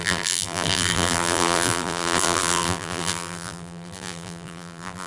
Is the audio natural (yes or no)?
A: no